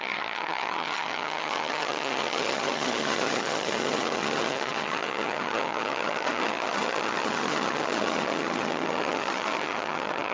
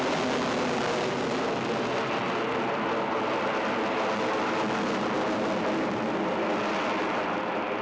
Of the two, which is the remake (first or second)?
first